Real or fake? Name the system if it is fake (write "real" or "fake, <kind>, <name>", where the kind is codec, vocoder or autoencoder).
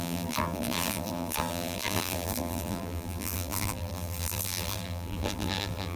fake, vocoder, BigVGAN v2